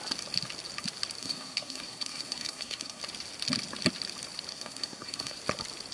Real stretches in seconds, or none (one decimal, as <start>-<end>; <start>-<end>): 0.0-1.2; 3.0-4.5; 5.4-5.9